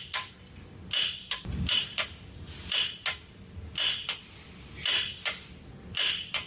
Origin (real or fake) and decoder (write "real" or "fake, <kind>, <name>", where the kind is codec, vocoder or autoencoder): real